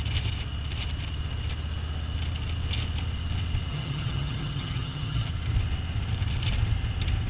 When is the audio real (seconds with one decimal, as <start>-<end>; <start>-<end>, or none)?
0.0-3.7; 5.3-7.3